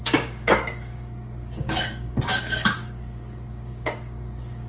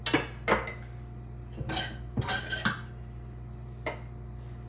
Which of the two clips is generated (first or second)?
first